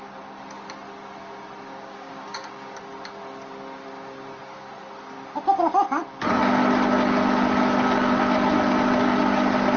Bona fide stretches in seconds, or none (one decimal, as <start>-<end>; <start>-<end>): 0.0-1.7; 2.8-9.8